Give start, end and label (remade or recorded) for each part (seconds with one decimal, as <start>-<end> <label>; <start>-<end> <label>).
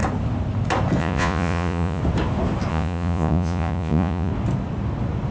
0.0-1.0 recorded; 1.0-2.0 remade; 2.0-2.7 recorded; 2.7-4.3 remade; 4.3-5.3 recorded